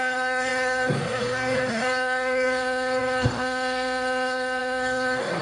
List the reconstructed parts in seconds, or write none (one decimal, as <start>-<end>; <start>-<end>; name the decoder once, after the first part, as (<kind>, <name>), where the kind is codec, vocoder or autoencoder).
0.0-5.4 (codec, SNAC)